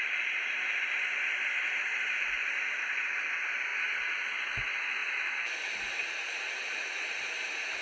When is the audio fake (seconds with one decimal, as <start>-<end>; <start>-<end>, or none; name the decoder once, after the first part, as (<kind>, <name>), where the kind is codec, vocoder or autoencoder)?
1.3-3.2 (vocoder, BigVGAN v2); 5.0-7.8